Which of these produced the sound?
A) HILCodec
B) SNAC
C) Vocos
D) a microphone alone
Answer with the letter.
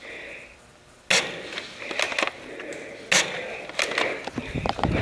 D